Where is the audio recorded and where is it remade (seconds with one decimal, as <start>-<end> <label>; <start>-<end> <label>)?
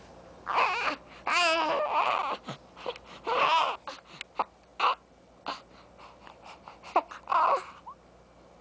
0.0-8.6 recorded